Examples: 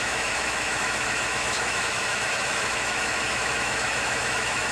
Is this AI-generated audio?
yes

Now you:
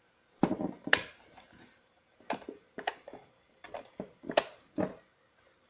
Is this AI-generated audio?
yes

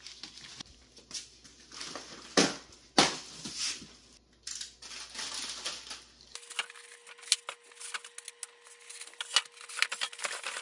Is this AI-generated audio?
no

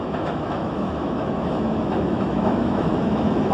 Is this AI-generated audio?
yes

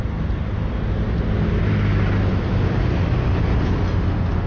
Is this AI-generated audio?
no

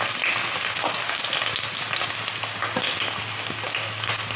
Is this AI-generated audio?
no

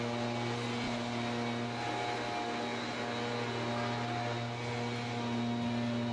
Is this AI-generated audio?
no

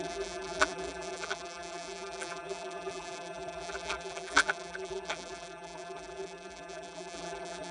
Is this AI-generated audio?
yes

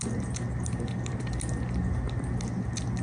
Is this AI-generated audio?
no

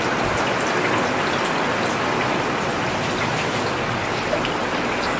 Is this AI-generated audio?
no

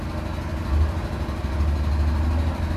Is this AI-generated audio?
no